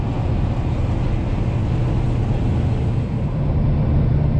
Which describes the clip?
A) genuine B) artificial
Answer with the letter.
A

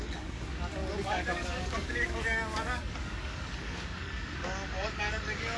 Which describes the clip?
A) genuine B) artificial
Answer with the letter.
B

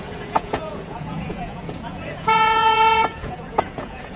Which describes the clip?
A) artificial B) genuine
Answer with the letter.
A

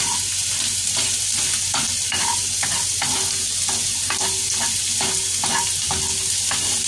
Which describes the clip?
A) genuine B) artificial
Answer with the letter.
A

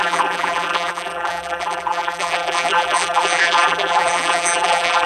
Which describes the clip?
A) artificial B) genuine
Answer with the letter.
A